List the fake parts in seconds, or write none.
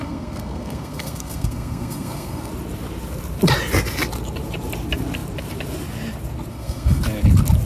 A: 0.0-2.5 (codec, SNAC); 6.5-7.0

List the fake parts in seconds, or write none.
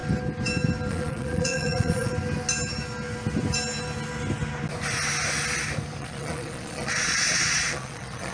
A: 0.9-2.1 (vocoder, Vocos); 6.0-8.3